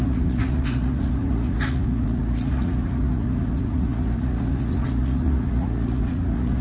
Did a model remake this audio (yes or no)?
yes